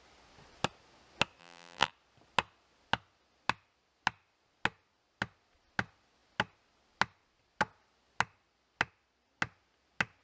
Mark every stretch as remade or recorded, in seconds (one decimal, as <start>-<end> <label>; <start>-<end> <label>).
0.0-1.4 recorded; 1.4-1.9 remade; 1.9-10.2 recorded